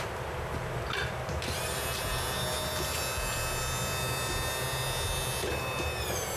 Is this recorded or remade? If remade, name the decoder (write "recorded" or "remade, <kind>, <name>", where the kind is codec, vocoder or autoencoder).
recorded